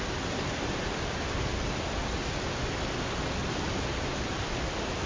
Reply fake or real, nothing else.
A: real